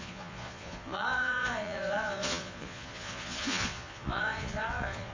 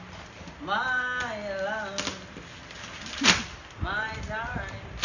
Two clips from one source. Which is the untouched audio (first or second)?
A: second